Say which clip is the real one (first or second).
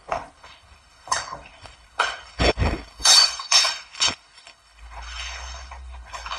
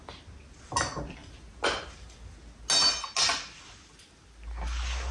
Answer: second